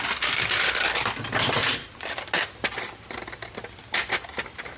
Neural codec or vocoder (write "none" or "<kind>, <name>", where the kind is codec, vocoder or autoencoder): none